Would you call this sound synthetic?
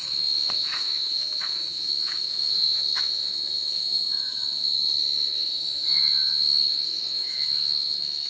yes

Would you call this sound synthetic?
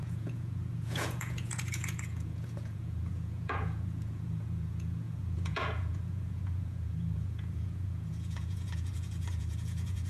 yes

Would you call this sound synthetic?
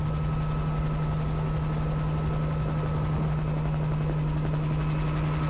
no